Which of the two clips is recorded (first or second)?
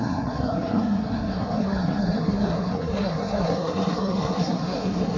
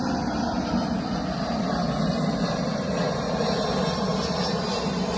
second